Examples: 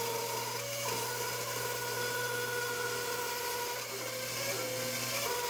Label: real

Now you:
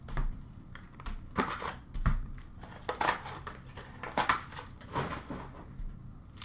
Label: real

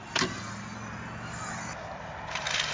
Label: real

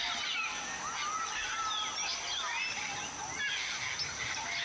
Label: real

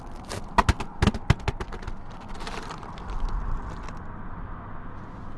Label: real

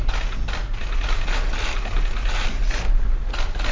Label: real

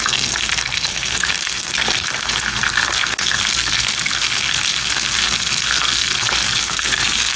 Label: fake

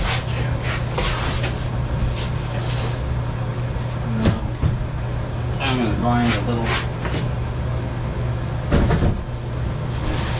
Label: real